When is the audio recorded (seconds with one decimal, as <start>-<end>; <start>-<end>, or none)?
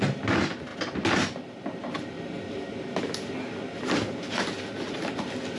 0.0-5.6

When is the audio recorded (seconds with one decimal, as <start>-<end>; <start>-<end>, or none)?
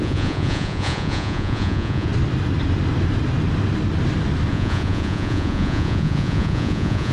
2.1-4.5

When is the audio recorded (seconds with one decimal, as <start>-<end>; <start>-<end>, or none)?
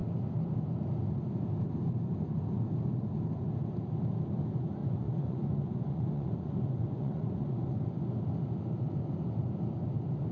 0.0-4.8; 8.1-10.3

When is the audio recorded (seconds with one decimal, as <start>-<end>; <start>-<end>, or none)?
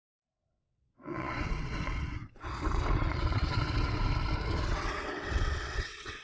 0.0-0.4; 4.1-4.7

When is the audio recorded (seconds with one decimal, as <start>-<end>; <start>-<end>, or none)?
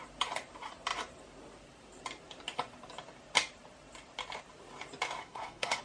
0.0-5.2